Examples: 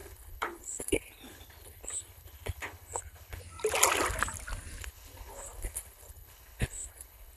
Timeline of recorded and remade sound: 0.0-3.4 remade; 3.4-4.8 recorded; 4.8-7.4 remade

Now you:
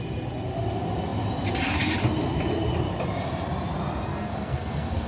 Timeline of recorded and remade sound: 0.0-4.1 recorded; 4.1-5.1 remade